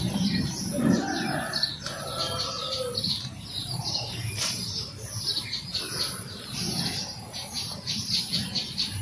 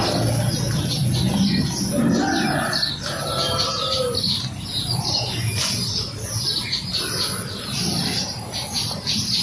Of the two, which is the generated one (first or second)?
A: first